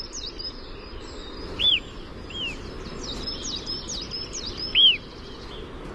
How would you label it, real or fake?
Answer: real